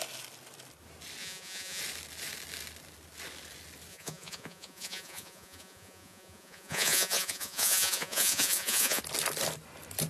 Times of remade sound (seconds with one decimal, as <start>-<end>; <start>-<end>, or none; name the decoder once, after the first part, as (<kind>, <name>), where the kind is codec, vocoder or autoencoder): 1.2-1.8 (vocoder, Vocos); 3.9-9.0